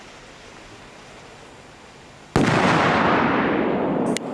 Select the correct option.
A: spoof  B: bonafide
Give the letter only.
B